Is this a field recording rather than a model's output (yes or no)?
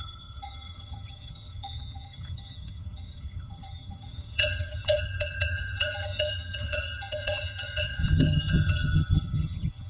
no